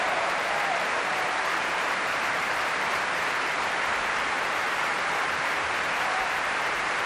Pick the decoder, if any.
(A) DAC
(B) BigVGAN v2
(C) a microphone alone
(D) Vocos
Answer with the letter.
B